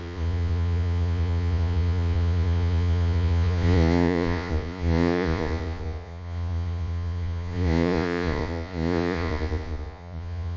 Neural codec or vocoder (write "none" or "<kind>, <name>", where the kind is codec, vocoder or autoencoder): vocoder, Vocos